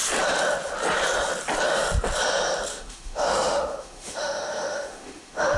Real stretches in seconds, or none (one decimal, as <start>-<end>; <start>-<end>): 0.0-2.7